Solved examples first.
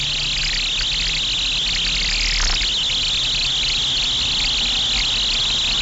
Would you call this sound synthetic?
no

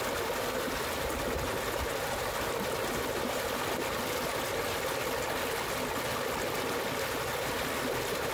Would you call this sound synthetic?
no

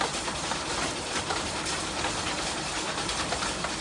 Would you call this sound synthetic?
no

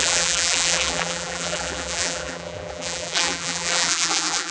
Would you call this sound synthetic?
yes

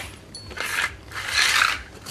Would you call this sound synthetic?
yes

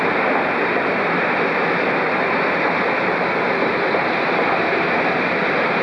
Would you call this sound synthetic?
no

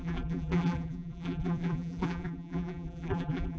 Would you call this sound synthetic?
yes